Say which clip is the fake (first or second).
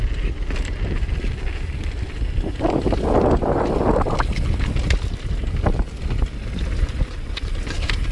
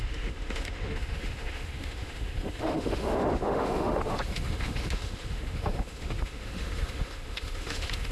second